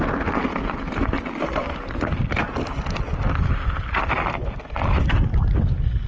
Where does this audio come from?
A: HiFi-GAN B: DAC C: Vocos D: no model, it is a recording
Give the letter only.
D